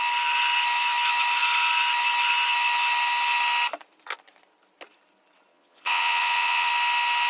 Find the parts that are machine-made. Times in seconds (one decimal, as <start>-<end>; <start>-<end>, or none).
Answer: 5.5-6.7